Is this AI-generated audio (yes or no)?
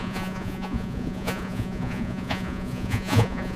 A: yes